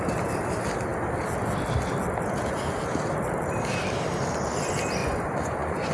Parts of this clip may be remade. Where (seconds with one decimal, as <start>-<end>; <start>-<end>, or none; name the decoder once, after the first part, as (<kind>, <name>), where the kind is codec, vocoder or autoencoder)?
5.0-5.9 (vocoder, Vocos)